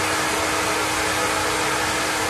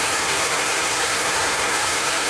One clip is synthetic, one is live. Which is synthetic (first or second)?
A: second